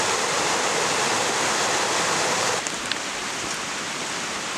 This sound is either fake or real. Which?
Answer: real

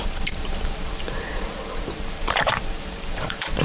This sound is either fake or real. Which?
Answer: fake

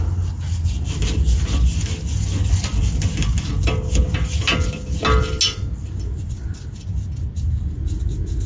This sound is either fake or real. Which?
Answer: real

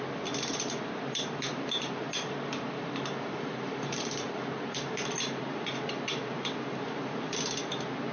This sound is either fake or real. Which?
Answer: fake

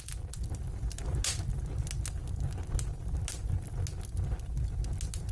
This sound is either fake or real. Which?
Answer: real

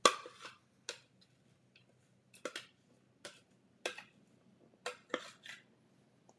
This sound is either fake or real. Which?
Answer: real